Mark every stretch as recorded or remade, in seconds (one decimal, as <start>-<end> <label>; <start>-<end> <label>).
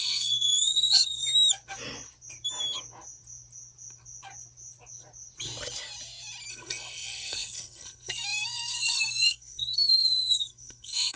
0.0-1.2 remade; 1.2-6.5 recorded; 6.5-11.2 remade